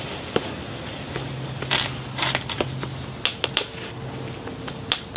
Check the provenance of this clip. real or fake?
real